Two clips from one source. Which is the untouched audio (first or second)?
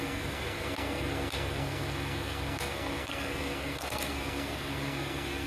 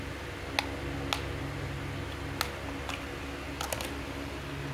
second